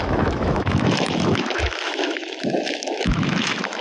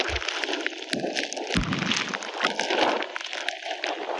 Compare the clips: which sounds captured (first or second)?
second